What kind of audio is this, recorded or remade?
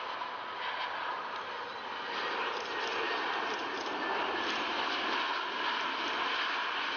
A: recorded